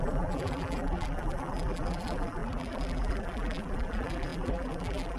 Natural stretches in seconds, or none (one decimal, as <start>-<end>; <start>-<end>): none